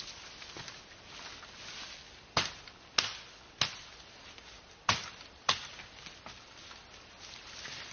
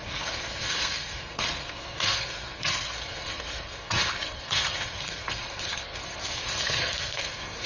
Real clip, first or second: first